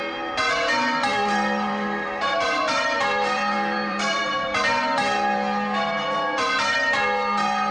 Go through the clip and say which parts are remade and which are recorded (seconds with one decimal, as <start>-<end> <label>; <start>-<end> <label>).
0.0-1.1 recorded; 1.1-4.2 remade; 4.2-7.7 recorded